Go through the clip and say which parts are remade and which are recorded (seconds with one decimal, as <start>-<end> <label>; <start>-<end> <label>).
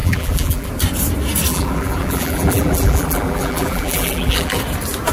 0.0-0.7 remade; 0.7-1.5 recorded; 1.5-4.6 remade; 4.6-5.1 recorded